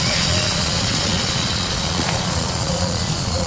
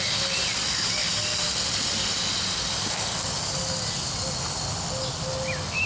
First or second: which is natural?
second